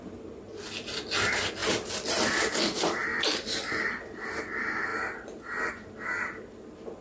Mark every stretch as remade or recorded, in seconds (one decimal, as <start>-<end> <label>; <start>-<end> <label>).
0.0-3.1 recorded; 3.1-4.4 remade; 4.4-4.9 recorded; 4.9-5.7 remade; 5.7-7.0 recorded